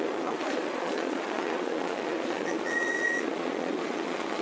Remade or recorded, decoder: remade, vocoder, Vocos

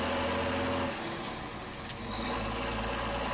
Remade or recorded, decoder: recorded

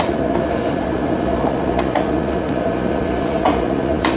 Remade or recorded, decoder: remade, vocoder, Vocos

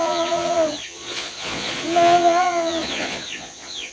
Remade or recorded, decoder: remade, vocoder, Vocos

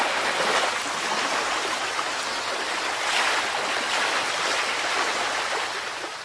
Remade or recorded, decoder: recorded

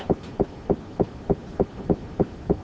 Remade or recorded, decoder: recorded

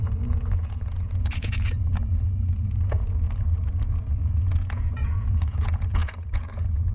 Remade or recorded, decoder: remade, vocoder, Vocos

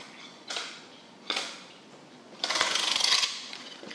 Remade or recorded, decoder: remade, vocoder, Vocos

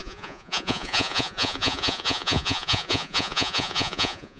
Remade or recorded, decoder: remade, vocoder, Vocos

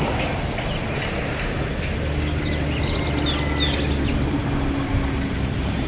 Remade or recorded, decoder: recorded